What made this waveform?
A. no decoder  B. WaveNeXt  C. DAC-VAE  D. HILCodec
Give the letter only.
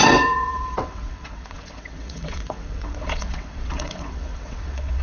B